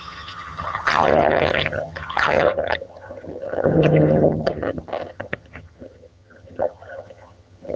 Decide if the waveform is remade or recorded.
remade